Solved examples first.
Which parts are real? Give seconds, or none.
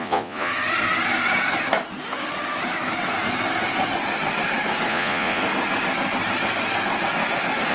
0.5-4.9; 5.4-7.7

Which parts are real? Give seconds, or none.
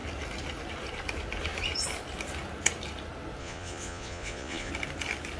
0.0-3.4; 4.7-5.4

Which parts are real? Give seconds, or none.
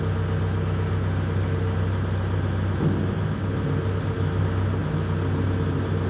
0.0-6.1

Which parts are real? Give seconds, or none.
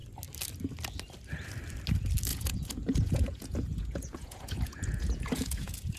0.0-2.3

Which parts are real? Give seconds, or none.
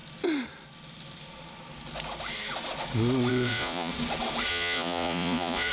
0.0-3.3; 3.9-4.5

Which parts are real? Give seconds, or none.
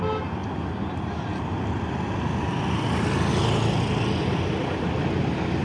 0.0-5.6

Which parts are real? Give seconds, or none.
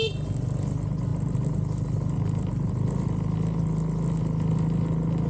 0.0-5.3